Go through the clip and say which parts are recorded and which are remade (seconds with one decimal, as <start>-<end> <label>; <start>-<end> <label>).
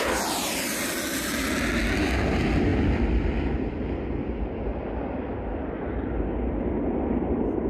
0.0-7.7 recorded